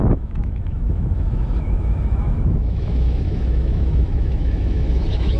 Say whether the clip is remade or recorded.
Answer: remade